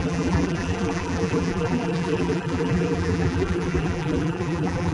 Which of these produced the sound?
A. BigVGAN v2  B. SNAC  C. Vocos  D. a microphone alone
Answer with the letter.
A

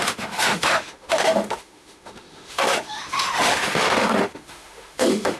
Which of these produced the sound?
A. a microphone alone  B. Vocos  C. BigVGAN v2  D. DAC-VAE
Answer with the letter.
D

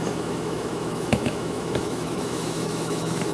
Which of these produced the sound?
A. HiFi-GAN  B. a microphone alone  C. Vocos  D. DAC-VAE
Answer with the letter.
D